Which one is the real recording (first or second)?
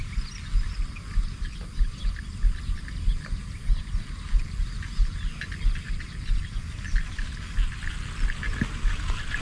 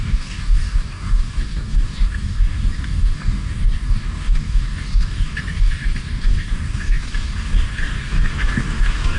first